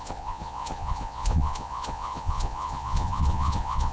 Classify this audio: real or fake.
fake